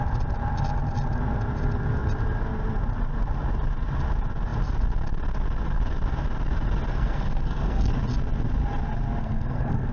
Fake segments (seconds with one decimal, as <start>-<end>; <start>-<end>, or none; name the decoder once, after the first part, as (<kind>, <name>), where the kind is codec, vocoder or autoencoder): 6.9-7.9 (codec, SNAC); 9.2-9.9

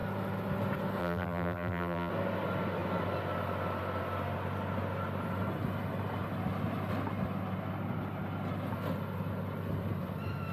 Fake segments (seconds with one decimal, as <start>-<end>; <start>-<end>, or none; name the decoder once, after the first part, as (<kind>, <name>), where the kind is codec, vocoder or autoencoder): 1.0-2.1 (vocoder, BigVGAN v2)

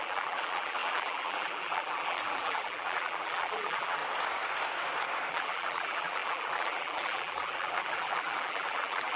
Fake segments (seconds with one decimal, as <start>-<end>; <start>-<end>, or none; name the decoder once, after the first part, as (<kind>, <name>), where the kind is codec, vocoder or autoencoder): 0.0-4.0 (vocoder, BigVGAN v2); 5.3-9.2

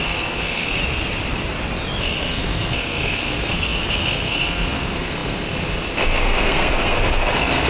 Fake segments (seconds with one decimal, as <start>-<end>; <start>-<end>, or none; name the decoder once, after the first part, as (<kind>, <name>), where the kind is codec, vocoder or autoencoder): 0.0-0.7 (codec, SNAC); 2.0-7.7

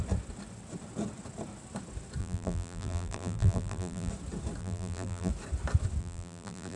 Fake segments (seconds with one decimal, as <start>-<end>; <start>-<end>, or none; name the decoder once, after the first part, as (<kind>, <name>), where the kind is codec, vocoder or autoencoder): 2.2-4.1 (vocoder, BigVGAN v2); 4.6-5.3; 6.0-6.8

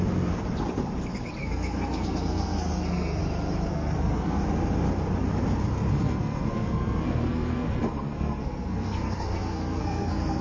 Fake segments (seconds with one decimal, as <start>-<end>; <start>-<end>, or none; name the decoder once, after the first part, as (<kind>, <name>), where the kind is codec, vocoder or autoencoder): 1.4-3.2 (codec, SNAC); 3.7-4.4; 5.9-10.4